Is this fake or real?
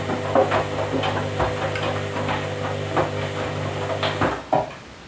real